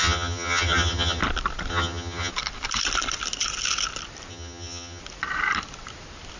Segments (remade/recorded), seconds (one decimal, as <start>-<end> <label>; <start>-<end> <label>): 0.0-1.2 remade; 1.2-1.7 recorded; 1.7-2.3 remade; 2.3-4.3 recorded; 4.3-5.0 remade; 5.0-6.4 recorded